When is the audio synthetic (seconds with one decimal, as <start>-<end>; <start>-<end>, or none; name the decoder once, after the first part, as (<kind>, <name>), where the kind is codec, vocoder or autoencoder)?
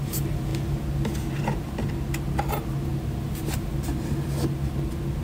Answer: none